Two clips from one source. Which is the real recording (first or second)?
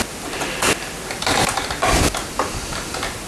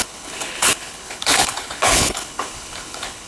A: first